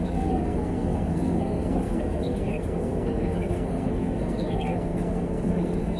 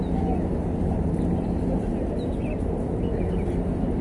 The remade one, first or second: first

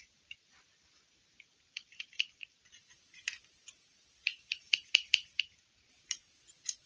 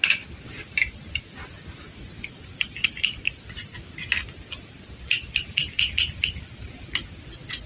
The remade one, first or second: first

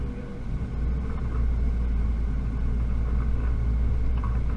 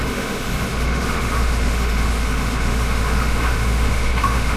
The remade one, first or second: second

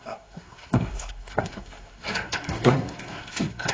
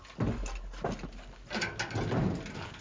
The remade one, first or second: first